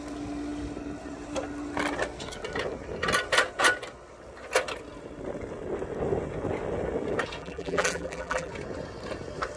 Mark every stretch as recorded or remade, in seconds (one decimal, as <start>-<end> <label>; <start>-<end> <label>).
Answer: 0.0-7.4 recorded; 7.4-8.5 remade; 8.5-9.6 recorded

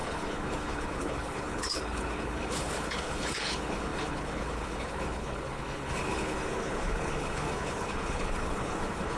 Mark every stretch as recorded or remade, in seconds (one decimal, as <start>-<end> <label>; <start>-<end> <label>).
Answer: 0.0-9.2 remade

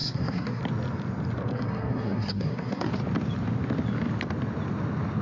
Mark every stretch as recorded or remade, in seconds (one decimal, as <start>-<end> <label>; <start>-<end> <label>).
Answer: 0.0-0.6 remade; 0.6-1.5 recorded; 1.5-2.9 remade; 2.9-5.2 recorded